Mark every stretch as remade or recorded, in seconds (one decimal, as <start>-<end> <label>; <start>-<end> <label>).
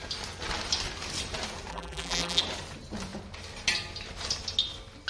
0.0-1.7 recorded; 1.7-2.4 remade; 2.4-5.1 recorded